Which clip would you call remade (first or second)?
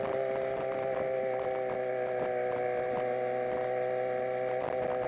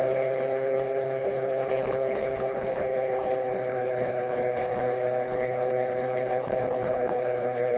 second